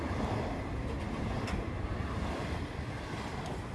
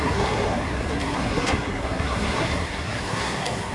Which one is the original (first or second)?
first